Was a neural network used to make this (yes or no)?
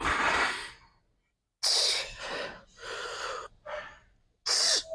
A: no